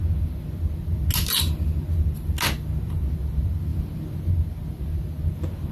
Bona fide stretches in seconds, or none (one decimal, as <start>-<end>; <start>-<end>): 0.0-5.7